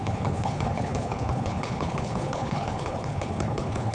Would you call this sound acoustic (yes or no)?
no